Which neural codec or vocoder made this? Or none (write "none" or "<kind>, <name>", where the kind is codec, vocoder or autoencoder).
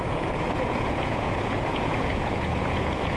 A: vocoder, Vocos